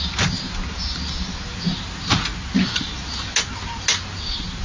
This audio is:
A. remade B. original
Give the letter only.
B